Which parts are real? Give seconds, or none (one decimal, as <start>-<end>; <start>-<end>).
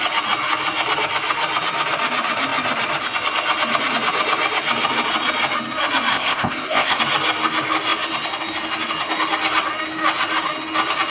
0.0-6.1; 7.0-11.1